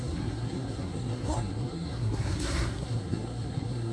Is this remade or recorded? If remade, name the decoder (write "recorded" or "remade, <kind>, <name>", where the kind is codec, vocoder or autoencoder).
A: remade, codec, SNAC